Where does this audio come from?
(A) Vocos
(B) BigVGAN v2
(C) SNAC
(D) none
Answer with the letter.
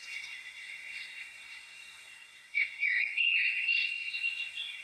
C